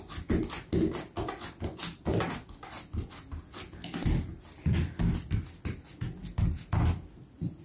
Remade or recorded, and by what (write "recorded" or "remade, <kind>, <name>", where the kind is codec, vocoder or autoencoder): recorded